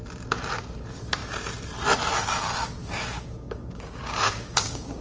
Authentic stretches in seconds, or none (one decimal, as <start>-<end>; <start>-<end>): 0.0-2.8